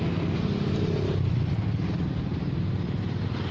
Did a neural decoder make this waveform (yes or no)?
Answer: no